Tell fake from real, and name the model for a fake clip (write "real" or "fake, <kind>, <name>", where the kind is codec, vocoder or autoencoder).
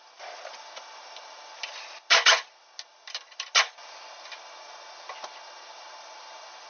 real